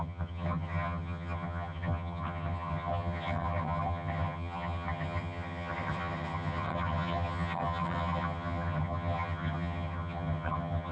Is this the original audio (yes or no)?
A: no